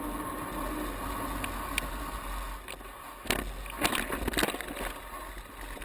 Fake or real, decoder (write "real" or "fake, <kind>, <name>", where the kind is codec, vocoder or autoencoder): real